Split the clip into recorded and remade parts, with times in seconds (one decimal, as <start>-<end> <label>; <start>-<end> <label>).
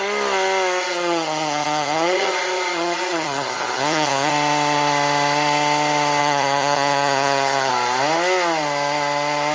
0.0-0.8 recorded; 0.8-4.3 remade; 4.3-6.2 recorded; 6.2-7.7 remade; 7.7-9.5 recorded